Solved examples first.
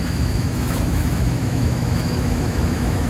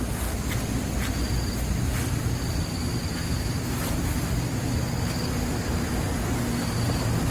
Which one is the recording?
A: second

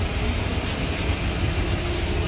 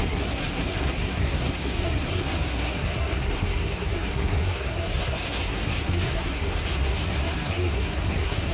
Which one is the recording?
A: first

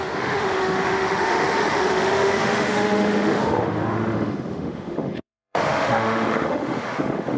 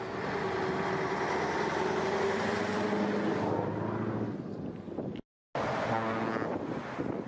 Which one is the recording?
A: second